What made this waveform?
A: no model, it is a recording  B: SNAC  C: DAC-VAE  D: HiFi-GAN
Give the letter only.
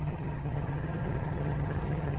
D